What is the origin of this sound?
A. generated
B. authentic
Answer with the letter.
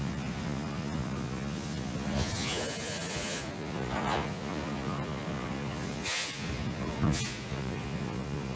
A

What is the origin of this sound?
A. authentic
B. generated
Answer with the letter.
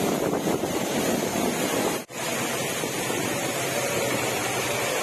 A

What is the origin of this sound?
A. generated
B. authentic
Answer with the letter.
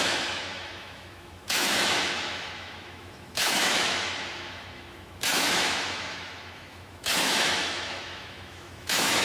A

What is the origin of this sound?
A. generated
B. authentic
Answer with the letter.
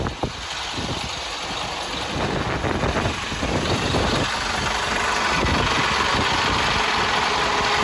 B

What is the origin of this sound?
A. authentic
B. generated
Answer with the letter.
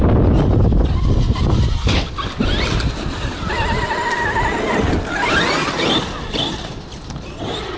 A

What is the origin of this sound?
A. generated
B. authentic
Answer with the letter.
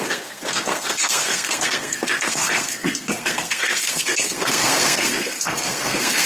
A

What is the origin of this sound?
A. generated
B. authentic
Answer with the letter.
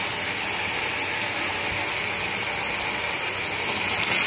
B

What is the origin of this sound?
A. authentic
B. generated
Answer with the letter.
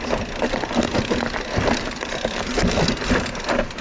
A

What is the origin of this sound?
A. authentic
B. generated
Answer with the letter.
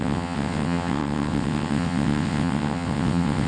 B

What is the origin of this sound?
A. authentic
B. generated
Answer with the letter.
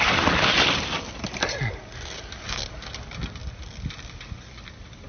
A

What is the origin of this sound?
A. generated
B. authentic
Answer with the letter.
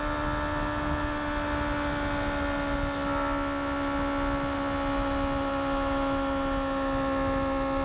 B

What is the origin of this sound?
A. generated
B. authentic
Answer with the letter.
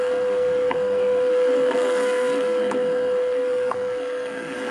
A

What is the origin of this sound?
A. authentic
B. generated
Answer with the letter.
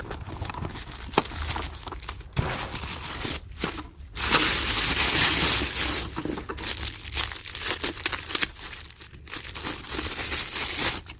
A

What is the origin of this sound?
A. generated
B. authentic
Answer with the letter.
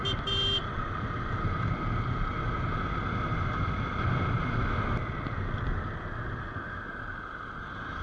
B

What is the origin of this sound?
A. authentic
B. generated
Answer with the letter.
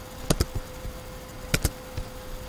A